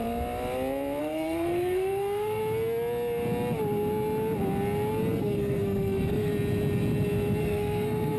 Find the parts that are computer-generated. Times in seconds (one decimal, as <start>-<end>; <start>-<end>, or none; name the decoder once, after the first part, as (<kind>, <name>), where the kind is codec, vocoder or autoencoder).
1.0-2.4 (codec, SNAC); 5.2-6.3; 7.4-8.2